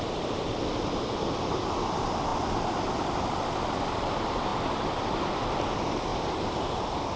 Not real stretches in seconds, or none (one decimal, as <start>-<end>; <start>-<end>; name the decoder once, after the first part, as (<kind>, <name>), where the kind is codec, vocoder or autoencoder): 6.1-7.2 (vocoder, BigVGAN v2)